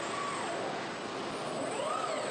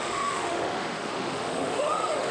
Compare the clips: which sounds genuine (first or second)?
first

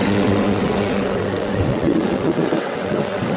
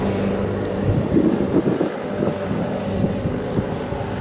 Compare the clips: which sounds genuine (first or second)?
second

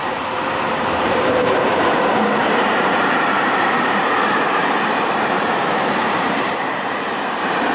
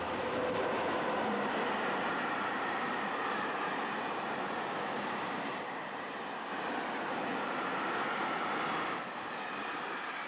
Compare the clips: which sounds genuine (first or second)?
second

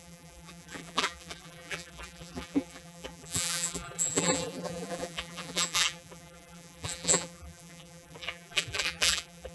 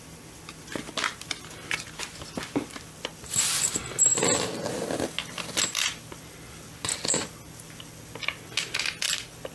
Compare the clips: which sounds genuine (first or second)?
second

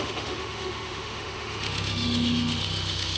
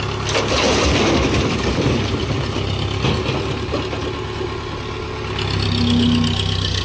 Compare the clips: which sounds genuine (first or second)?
second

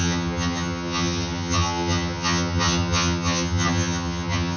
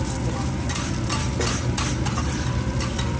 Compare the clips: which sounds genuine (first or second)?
second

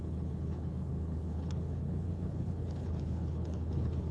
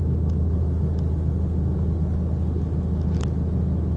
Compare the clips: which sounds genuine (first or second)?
second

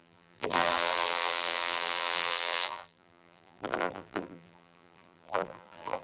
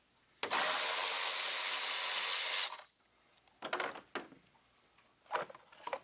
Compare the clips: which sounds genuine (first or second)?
second